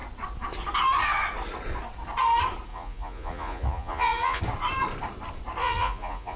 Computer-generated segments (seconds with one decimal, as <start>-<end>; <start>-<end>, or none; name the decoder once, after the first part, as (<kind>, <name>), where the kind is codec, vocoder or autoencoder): 2.7-4.4 (vocoder, Vocos); 5.6-6.4